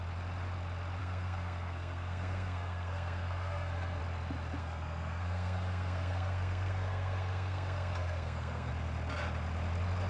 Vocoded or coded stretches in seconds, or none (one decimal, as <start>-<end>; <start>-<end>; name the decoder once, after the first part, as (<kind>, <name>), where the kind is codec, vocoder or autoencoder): 1.0-4.0 (codec, SNAC); 4.6-8.7

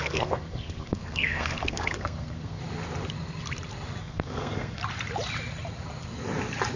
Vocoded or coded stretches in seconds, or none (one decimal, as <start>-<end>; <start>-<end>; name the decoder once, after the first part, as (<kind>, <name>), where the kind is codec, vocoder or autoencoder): 0.0-2.6 (codec, SNAC); 4.0-4.8

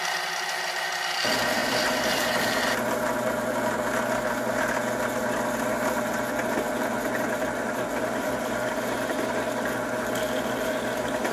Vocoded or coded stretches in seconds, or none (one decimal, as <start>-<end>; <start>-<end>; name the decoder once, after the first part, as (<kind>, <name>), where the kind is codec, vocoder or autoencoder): 1.6-2.2 (vocoder, BigVGAN v2)

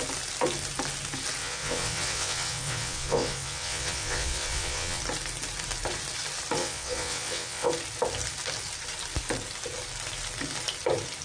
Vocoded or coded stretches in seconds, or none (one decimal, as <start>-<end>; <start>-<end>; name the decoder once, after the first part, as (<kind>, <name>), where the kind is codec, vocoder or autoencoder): 1.4-5.0 (vocoder, WaveNeXt); 6.6-7.7

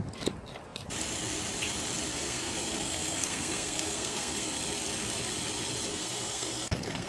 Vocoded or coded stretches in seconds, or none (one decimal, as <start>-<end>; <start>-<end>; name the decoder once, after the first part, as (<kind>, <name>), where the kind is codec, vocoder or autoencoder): 2.1-4.5 (codec, SNAC); 5.9-7.1

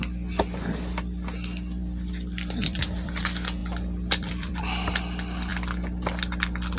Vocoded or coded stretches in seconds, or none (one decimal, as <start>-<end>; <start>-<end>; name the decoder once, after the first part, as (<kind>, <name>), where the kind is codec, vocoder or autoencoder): 1.8-3.2 (vocoder, BigVGAN v2); 3.6-4.6

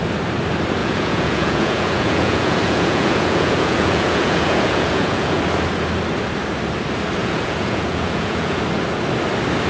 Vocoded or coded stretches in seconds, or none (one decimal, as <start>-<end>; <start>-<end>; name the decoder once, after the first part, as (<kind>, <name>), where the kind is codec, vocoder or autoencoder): 0.8-5.4 (vocoder, Vocos); 7.2-8.6